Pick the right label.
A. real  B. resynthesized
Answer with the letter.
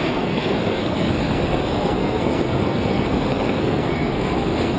B